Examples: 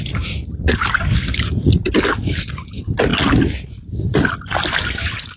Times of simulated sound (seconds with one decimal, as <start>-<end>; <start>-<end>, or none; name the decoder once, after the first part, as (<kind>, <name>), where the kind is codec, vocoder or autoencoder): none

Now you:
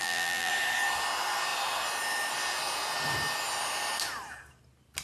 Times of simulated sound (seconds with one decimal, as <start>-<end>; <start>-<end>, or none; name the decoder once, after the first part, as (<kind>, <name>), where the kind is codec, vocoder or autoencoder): 0.0-0.5 (vocoder, BigVGAN v2)

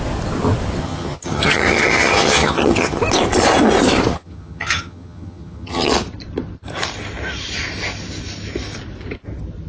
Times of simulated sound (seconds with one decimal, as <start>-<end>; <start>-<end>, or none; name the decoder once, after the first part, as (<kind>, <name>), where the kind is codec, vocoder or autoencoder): 0.8-3.0 (vocoder, HiFi-GAN); 4.1-5.9

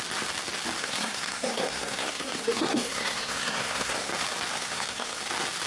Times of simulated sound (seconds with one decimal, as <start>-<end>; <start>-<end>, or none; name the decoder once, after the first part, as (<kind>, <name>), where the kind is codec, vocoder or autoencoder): 0.8-4.1 (codec, SNAC); 4.5-5.2